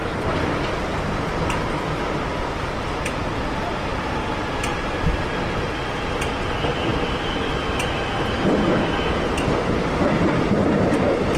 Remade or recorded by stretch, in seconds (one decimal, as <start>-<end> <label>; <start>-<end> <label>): 0.0-1.5 remade; 1.5-11.4 recorded